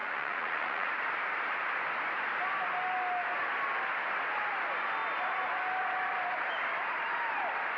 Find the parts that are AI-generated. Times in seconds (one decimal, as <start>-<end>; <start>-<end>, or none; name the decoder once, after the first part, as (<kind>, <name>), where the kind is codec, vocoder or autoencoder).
0.0-0.9 (vocoder, Vocos)

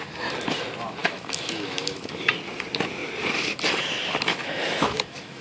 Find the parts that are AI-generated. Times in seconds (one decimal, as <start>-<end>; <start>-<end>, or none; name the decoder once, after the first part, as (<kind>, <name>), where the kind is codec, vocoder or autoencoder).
1.0-2.3 (autoencoder, DAC-VAE); 4.3-5.4

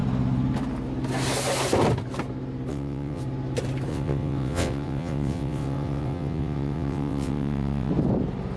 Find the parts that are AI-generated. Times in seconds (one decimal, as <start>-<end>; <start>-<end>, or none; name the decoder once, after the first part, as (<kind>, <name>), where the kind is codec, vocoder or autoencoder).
2.7-3.2 (vocoder, WaveNeXt); 3.9-7.9